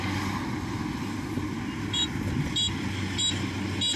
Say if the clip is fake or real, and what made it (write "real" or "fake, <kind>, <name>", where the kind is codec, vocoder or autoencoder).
real